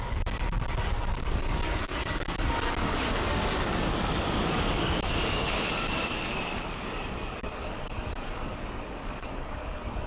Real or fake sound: fake